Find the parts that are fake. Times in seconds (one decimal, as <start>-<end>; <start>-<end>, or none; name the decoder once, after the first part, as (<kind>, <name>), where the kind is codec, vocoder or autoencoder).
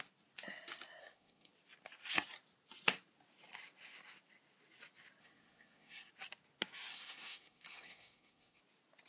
1.0-1.5 (codec, SNAC); 5.2-6.1; 6.9-8.6